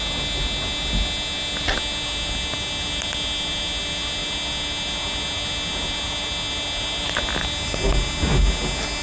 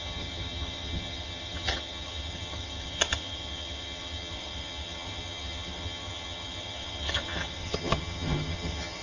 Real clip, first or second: first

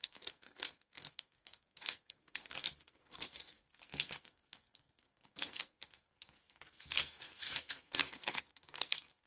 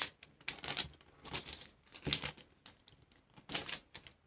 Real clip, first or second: second